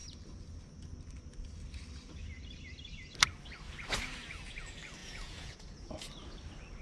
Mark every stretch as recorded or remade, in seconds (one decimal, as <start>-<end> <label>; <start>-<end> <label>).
0.0-5.0 recorded; 5.0-5.9 remade; 5.9-6.8 recorded